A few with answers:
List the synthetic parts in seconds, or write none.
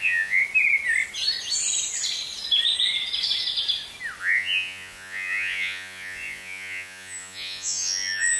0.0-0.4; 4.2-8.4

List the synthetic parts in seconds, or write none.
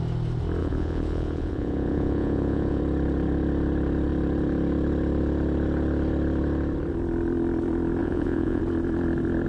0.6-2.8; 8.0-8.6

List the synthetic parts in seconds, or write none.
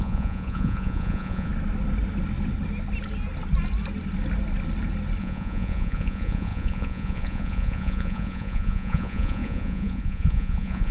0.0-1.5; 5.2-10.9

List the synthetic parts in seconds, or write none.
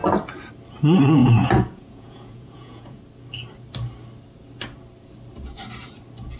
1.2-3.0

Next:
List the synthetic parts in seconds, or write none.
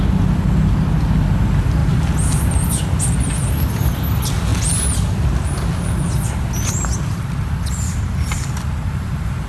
none